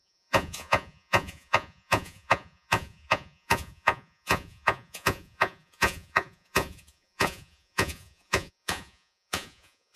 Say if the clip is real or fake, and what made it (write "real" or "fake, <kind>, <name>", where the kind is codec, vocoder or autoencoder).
fake, vocoder, Vocos